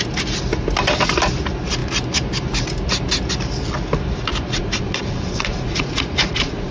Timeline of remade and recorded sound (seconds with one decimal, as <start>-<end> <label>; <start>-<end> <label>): 0.0-4.3 recorded; 4.3-6.7 remade